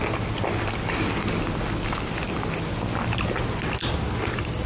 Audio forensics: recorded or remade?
recorded